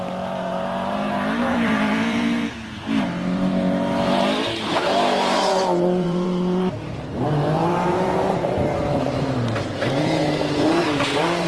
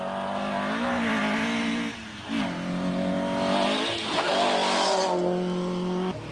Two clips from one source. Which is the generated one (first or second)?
first